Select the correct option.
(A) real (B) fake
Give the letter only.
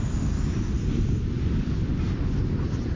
B